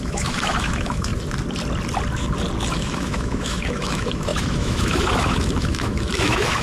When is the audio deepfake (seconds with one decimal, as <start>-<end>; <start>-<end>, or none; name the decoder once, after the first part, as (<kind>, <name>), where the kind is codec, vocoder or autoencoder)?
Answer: 0.0-1.1 (autoencoder, DAC-VAE); 2.7-6.6